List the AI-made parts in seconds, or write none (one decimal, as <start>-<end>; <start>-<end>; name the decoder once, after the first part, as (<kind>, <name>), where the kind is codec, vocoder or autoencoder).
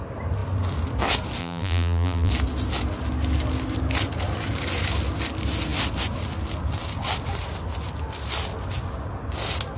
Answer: 1.4-2.3 (vocoder, BigVGAN v2)